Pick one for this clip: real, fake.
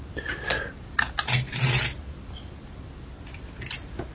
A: real